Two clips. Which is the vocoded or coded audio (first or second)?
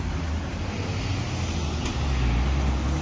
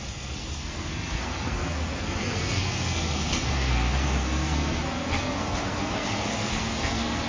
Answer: second